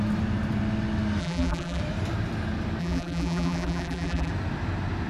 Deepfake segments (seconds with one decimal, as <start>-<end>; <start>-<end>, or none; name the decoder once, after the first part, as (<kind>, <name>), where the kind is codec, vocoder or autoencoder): 1.2-1.8 (vocoder, BigVGAN v2); 2.8-4.3